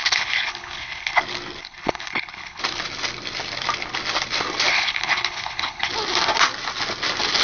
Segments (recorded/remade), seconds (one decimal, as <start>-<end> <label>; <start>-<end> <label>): 0.0-1.2 remade; 1.2-1.6 recorded; 1.6-2.6 remade; 2.6-4.7 recorded; 4.7-5.9 remade; 5.9-7.4 recorded